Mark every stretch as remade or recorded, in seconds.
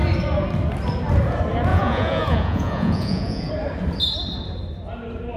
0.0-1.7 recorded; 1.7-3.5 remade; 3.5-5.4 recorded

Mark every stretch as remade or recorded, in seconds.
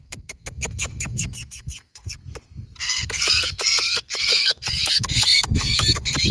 0.0-2.2 remade; 2.2-2.8 recorded; 2.8-6.3 remade